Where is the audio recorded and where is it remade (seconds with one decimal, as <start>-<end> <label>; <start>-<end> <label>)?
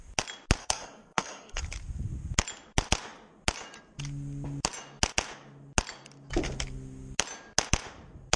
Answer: 0.0-0.6 recorded; 0.6-1.6 remade; 1.6-8.4 recorded